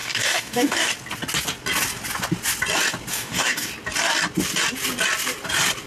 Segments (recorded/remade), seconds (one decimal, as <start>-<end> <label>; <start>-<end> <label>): 0.0-0.9 remade; 0.9-3.1 recorded; 3.1-3.7 remade; 3.7-5.9 recorded